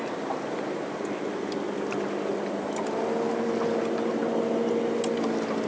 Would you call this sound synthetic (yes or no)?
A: no